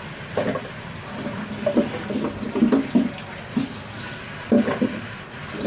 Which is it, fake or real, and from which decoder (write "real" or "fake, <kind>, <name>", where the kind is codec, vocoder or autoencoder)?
real